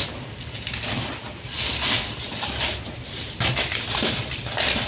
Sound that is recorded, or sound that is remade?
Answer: recorded